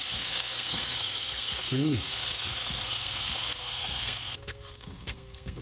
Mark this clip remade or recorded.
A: remade